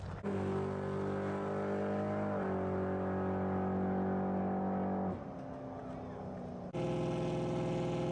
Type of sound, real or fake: real